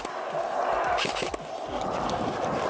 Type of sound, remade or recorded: recorded